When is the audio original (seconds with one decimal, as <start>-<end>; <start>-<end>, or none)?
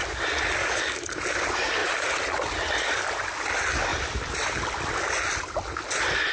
0.0-0.6; 1.2-6.3